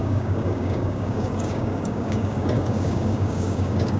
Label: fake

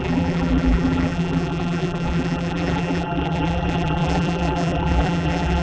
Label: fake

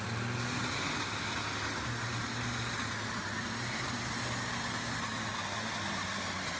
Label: real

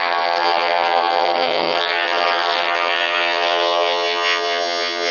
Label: fake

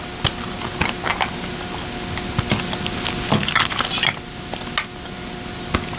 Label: real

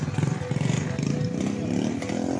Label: real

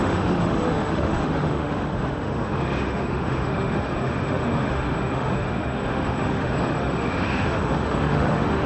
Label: fake